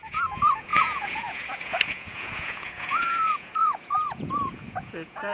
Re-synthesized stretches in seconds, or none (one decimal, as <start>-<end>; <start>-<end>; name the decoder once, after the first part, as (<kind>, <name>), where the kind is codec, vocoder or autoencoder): 0.0-5.3 (vocoder, Vocos)